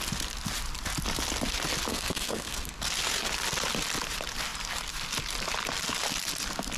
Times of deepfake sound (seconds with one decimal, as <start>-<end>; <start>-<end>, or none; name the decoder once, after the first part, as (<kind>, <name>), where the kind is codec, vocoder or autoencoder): 1.9-2.8 (codec, SNAC)

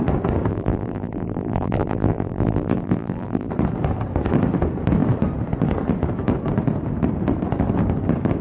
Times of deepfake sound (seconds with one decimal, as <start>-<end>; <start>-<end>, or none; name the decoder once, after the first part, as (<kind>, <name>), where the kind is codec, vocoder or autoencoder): 0.5-3.5 (vocoder, BigVGAN v2)

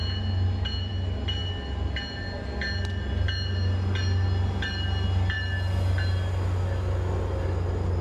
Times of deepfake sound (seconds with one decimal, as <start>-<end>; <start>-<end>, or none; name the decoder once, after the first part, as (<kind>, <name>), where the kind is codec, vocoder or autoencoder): none

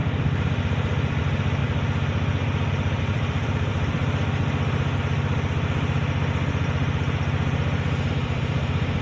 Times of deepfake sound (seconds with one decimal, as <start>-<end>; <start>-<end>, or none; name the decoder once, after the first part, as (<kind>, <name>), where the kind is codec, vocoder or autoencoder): 0.0-1.6 (vocoder, BigVGAN v2); 3.0-3.7; 8.1-9.0

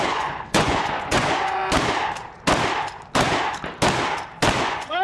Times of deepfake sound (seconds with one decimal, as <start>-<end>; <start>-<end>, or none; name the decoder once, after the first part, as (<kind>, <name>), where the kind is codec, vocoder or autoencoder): 0.0-1.6 (vocoder, Vocos); 4.6-5.0

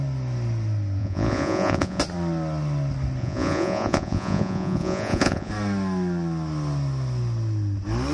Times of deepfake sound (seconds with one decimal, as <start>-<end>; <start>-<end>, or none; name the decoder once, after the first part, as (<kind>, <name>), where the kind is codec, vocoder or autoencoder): 1.0-2.0 (vocoder, Vocos); 3.2-5.5